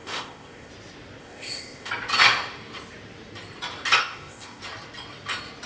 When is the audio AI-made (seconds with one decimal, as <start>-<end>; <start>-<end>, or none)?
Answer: 0.0-0.7; 1.2-1.9; 4.0-4.6